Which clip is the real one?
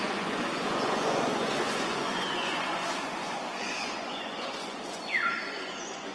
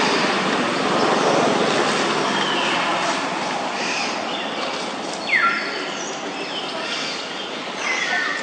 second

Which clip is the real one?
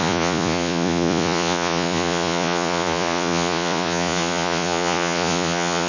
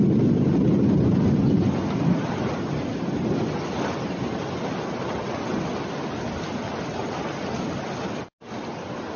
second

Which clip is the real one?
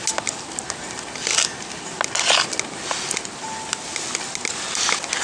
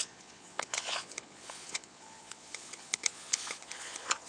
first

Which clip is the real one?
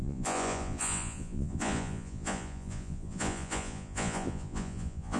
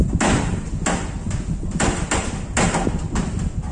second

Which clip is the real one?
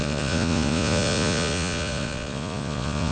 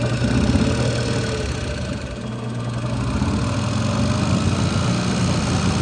second